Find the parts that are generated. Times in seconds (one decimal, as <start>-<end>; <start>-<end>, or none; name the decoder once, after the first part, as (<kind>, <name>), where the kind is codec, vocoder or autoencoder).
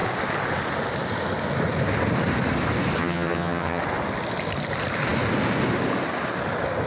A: 3.0-3.8 (vocoder, HiFi-GAN)